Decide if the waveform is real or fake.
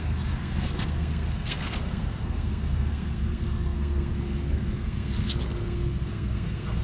fake